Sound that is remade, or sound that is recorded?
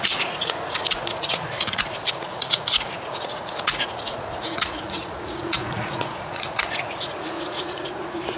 remade